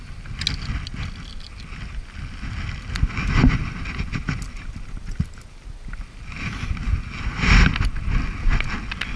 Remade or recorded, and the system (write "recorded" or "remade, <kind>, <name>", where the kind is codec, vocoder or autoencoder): recorded